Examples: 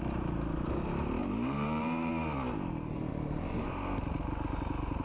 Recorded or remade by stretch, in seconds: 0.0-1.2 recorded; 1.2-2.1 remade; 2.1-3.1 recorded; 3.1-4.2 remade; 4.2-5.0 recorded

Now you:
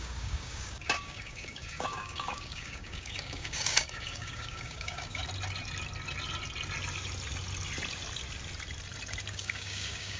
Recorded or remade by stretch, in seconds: 0.0-5.2 remade; 5.2-9.3 recorded; 9.3-10.2 remade